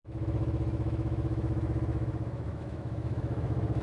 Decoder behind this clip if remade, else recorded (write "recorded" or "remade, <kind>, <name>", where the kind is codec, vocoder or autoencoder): remade, autoencoder, DAC-VAE